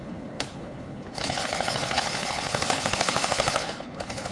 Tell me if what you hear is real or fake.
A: fake